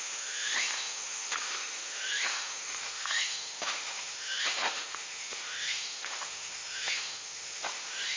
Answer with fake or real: fake